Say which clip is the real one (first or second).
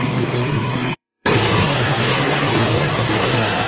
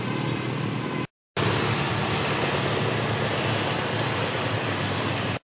second